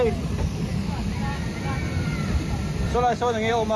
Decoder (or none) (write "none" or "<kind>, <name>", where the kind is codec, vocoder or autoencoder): none